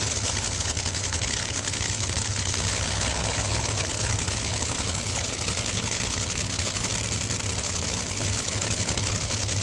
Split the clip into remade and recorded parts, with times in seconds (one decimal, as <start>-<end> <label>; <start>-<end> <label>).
0.0-6.9 remade; 6.9-7.6 recorded; 7.6-9.6 remade